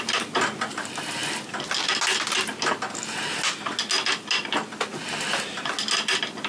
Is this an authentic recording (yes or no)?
yes